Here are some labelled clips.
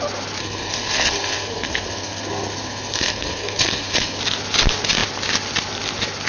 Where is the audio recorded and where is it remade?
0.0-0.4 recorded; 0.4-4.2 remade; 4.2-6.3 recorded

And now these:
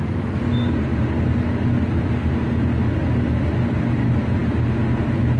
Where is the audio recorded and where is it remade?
0.0-5.4 recorded

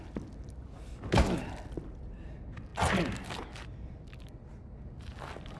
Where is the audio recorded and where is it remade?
0.0-5.6 recorded

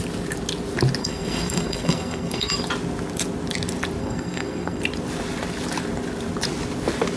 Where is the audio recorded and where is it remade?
0.0-1.0 recorded; 1.0-2.5 remade; 2.5-4.0 recorded; 4.0-4.8 remade; 4.8-7.2 recorded

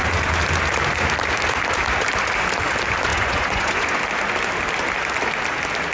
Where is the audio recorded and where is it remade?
0.0-3.1 recorded; 3.1-4.0 remade; 4.0-5.9 recorded

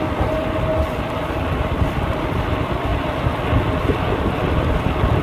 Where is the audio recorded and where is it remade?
0.0-5.2 recorded

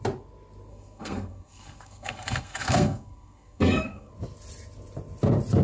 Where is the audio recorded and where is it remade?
0.0-0.7 recorded; 0.7-4.1 remade; 4.1-5.6 recorded